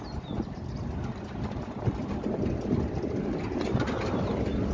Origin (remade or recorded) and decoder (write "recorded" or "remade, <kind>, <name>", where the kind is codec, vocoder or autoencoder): recorded